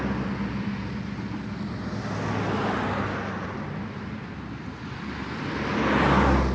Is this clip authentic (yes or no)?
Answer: yes